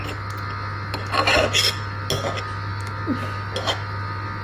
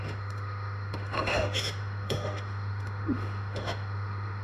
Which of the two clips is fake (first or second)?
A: second